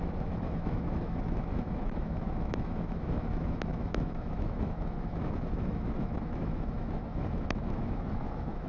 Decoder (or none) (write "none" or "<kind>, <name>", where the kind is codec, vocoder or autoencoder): autoencoder, DAC-VAE